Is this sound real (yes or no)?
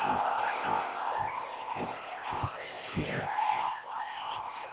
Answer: no